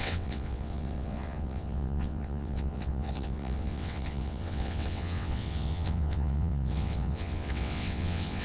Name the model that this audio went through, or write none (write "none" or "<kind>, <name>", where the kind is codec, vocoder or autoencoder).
vocoder, WaveNeXt